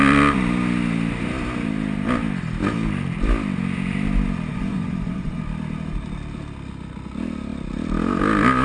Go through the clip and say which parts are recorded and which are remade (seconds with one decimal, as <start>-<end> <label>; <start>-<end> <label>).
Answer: 0.0-4.5 recorded; 4.5-5.4 remade; 5.4-8.6 recorded